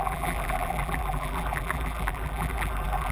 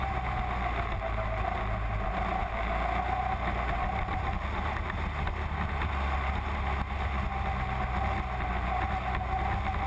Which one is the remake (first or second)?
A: first